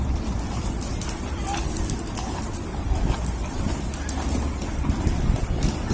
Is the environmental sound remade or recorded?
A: recorded